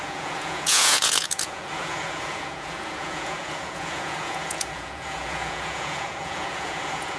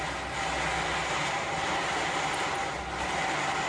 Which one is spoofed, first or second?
first